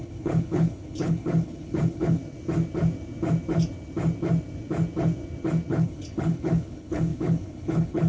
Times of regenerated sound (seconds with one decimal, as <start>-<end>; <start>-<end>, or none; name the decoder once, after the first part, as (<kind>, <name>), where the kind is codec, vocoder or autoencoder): 0.0-2.2 (codec, HILCodec); 5.7-8.1